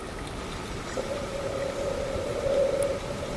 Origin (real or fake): real